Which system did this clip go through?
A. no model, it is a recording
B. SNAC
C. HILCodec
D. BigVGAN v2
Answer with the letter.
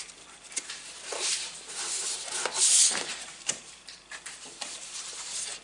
D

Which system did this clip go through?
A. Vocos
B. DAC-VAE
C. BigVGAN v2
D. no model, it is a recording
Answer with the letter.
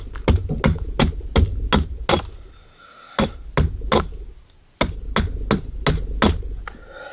D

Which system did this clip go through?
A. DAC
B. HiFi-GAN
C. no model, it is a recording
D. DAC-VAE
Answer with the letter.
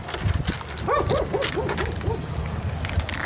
C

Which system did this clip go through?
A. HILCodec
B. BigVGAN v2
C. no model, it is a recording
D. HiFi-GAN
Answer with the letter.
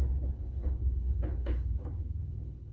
A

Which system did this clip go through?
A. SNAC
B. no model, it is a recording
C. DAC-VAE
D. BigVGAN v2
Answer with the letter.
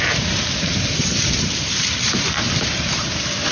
D